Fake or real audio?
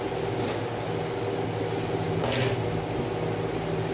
real